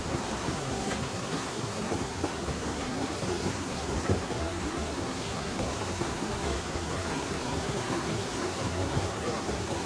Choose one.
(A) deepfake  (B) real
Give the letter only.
A